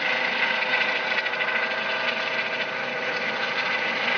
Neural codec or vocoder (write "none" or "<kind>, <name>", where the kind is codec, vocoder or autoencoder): none